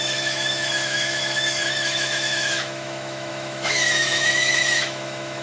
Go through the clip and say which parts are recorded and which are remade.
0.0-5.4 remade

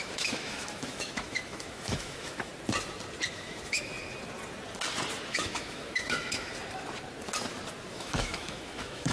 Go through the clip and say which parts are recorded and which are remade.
0.0-2.5 remade; 2.5-3.3 recorded; 3.3-3.9 remade; 3.9-5.3 recorded; 5.3-6.5 remade; 6.5-7.9 recorded; 7.9-9.1 remade